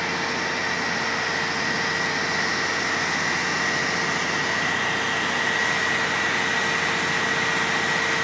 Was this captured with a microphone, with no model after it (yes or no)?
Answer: yes